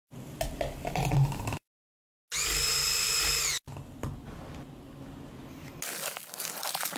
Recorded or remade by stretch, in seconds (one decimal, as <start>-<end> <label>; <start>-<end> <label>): 0.0-7.0 recorded